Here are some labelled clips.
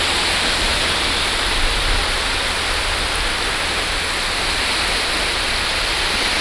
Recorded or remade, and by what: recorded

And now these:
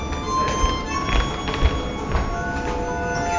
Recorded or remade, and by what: recorded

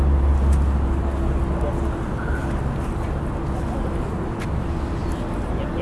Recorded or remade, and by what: recorded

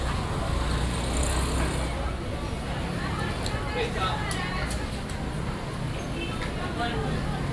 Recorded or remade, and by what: recorded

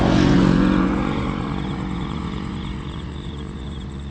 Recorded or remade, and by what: remade, vocoder, Vocos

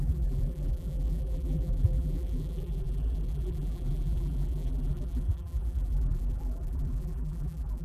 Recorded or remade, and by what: remade, vocoder, BigVGAN v2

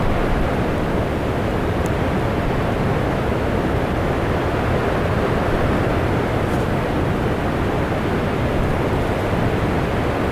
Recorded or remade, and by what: recorded